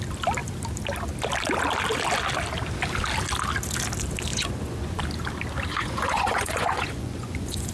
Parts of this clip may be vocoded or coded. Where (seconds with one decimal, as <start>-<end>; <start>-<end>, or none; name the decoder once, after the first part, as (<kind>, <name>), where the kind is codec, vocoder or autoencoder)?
4.3-5.0 (vocoder, Vocos); 5.7-7.7